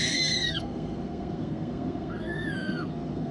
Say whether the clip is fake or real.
fake